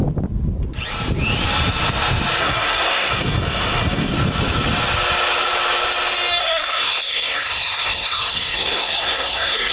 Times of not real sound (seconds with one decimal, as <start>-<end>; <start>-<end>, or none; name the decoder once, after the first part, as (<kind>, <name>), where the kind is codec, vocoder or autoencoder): 2.4-4.1 (codec, SNAC); 6.4-9.7

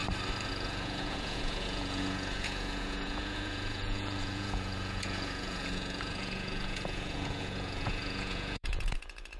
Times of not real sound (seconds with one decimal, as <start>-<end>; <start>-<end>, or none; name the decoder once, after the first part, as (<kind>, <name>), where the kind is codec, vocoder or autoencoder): 0.5-9.4 (vocoder, Vocos)

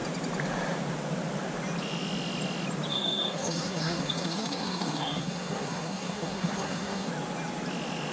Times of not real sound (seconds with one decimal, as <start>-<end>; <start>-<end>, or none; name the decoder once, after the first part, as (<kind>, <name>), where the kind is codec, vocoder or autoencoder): 2.9-7.1 (codec, SNAC)